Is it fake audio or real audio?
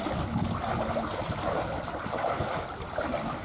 real